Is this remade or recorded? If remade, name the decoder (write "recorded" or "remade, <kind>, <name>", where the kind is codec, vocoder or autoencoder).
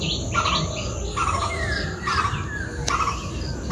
recorded